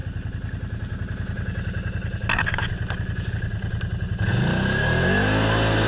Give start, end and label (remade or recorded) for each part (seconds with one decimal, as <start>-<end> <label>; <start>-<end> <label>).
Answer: 0.0-5.9 recorded